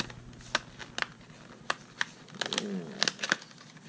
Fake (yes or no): no